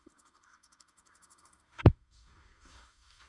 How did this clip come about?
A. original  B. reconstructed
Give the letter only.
B